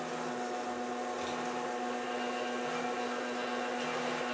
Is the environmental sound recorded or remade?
recorded